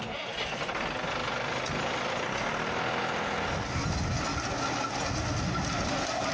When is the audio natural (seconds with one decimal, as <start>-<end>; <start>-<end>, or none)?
0.0-6.3